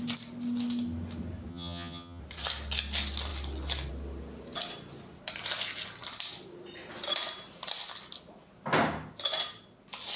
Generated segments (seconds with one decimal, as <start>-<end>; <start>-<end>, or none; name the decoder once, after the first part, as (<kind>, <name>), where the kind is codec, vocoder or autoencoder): 1.5-2.2 (vocoder, HiFi-GAN)